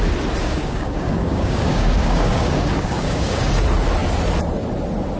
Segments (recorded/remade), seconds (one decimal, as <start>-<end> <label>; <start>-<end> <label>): 0.0-0.4 recorded; 0.4-3.5 remade; 3.5-5.2 recorded